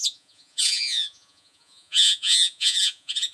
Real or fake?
fake